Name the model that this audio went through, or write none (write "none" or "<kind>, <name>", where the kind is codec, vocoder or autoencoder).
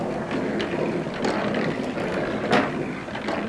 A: none